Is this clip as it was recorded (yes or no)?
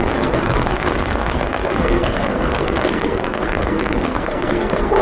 no